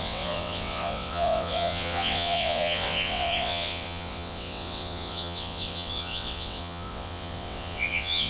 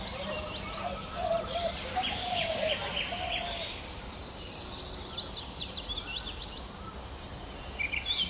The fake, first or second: first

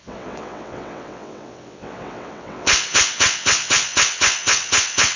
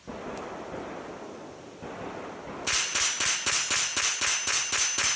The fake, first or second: first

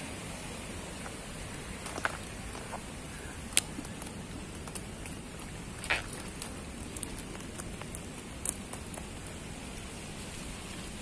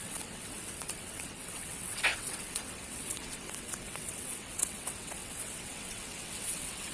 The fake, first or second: second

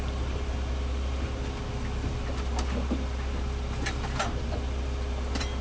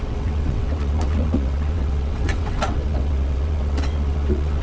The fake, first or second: second